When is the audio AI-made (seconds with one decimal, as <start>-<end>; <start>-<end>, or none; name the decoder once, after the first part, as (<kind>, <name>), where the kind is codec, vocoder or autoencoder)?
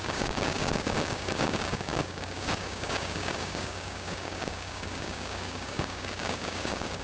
0.0-7.0 (codec, DAC)